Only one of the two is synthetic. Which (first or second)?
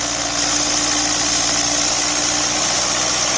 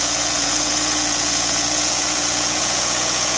second